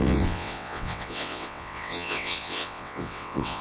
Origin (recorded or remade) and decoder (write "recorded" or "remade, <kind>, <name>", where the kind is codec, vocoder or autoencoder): remade, vocoder, WaveNeXt